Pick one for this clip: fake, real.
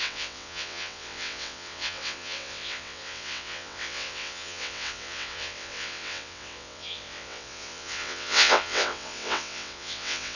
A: fake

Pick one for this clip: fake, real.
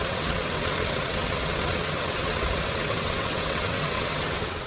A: fake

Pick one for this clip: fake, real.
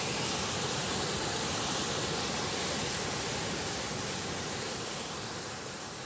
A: real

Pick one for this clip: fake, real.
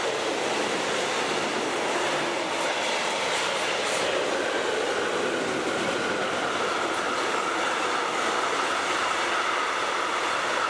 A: real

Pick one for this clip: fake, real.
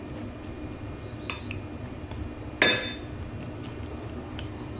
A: real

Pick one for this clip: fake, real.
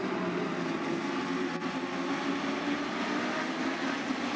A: real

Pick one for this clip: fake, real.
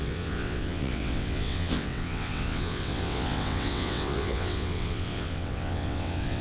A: fake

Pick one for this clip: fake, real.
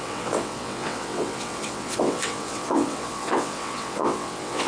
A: fake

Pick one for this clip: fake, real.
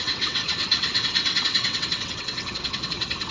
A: fake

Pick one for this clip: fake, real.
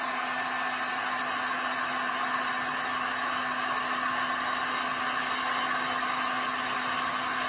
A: real